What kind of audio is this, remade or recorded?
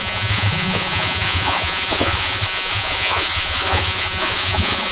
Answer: remade